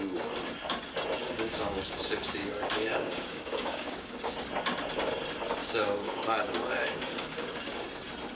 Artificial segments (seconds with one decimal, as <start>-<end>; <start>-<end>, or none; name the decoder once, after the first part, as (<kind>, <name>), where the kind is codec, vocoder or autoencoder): 1.2-1.9 (codec, DAC); 2.4-4.5; 5.6-7.8